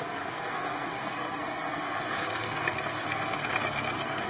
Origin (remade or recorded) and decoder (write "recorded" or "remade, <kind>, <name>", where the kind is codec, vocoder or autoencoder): remade, codec, SNAC